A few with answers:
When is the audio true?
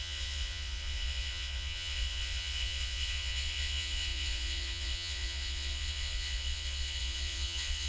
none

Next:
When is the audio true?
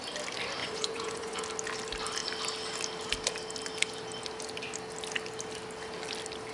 0.0-0.6; 1.4-6.5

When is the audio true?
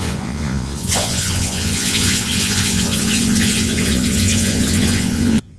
none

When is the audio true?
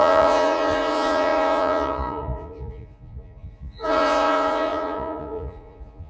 none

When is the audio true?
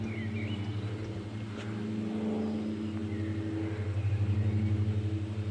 0.0-5.5